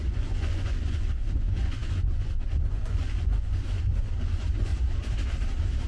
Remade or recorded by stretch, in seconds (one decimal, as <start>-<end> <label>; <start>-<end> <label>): 0.0-4.7 remade; 4.7-5.9 recorded